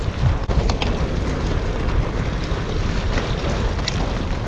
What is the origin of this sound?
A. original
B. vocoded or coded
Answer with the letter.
B